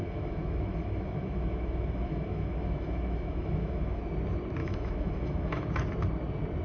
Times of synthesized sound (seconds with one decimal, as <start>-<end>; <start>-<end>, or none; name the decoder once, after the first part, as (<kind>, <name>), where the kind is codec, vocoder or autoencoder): 0.0-4.0 (autoencoder, DAC-VAE); 4.6-5.7